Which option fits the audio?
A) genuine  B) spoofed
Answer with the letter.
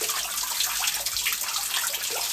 A